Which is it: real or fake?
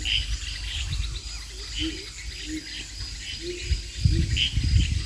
real